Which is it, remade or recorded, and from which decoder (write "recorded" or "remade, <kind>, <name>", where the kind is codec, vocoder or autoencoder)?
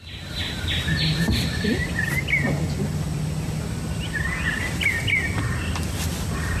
recorded